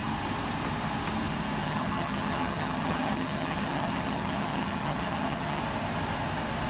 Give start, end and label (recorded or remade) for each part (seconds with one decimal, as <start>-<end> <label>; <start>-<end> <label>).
0.0-1.6 recorded; 1.6-5.6 remade; 5.6-6.7 recorded